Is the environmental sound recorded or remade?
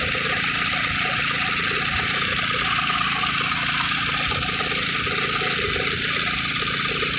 recorded